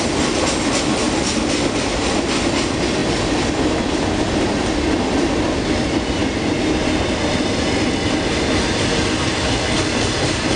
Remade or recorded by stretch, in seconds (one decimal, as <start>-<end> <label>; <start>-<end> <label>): 0.0-10.6 recorded

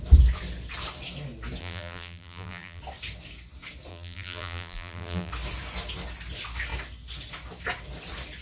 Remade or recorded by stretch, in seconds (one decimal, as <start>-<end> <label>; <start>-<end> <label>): 0.0-1.6 recorded; 1.6-2.8 remade; 2.8-3.9 recorded; 3.9-5.3 remade; 5.3-8.4 recorded

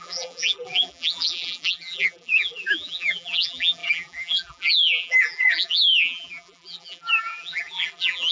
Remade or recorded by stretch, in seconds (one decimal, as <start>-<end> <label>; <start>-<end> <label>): 0.0-8.3 remade

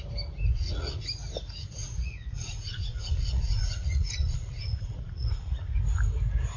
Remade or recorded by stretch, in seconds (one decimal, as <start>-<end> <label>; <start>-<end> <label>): 0.0-0.5 recorded; 0.5-1.0 remade; 1.0-1.8 recorded; 1.8-5.8 remade; 5.8-6.6 recorded

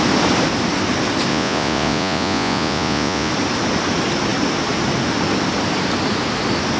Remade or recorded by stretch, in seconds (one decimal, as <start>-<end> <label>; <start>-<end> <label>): 0.0-1.3 recorded; 1.3-3.3 remade; 3.3-6.8 recorded